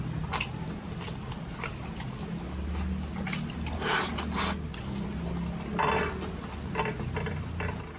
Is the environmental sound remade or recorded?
recorded